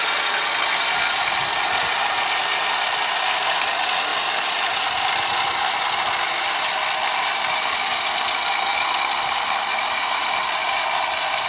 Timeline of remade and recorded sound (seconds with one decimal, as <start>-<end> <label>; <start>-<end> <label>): 0.0-1.8 recorded; 1.8-2.5 remade; 2.5-4.1 recorded; 4.1-6.7 remade; 6.7-8.7 recorded; 8.7-9.7 remade; 9.7-11.5 recorded